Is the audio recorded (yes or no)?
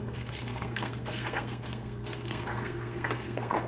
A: no